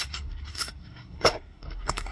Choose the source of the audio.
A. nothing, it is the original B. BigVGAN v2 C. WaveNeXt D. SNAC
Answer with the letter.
D